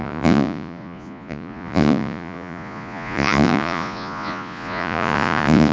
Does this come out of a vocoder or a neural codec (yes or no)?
yes